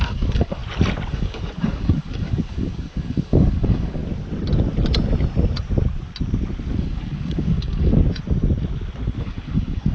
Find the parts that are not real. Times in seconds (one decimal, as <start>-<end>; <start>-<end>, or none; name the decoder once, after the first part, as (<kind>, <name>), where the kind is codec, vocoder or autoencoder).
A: 0.0-0.6 (codec, DAC); 1.1-4.0; 6.8-7.9; 9.2-9.9